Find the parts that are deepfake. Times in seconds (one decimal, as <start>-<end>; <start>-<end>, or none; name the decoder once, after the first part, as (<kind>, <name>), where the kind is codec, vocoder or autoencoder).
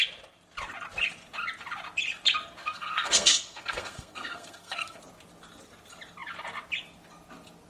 2.6-5.0 (codec, SNAC)